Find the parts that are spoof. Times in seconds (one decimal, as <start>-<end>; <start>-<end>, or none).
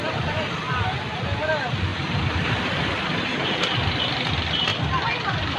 0.0-1.9; 2.6-5.6